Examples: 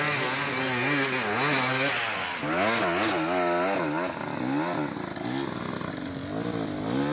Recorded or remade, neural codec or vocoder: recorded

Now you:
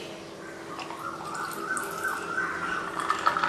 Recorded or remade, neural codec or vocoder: recorded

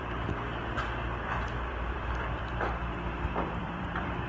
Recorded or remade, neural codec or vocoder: remade, vocoder, BigVGAN v2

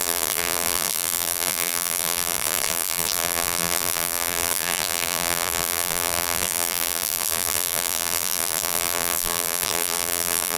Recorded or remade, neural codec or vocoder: remade, vocoder, BigVGAN v2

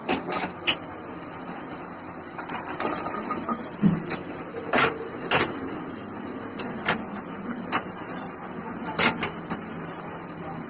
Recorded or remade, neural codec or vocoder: recorded